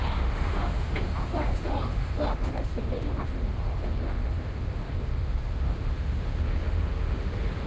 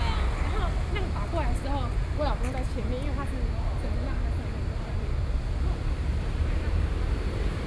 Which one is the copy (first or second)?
first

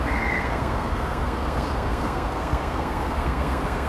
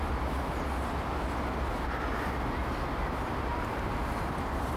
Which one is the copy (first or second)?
first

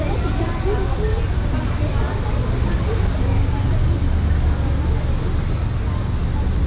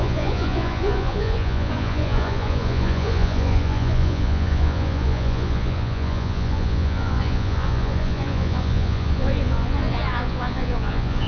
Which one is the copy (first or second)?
second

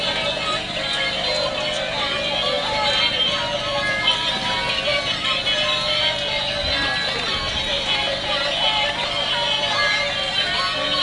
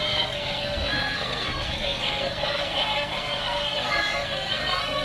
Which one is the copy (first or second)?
second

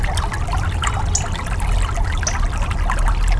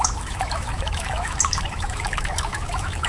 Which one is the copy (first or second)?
second